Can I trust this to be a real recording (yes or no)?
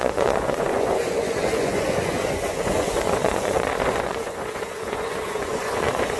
no